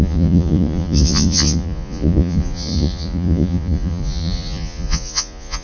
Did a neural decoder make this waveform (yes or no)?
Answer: yes